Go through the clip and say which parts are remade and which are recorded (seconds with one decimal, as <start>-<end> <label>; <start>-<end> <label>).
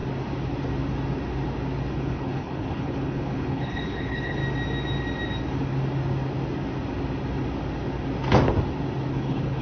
0.0-1.9 recorded; 1.9-4.4 remade; 4.4-9.1 recorded; 9.1-9.6 remade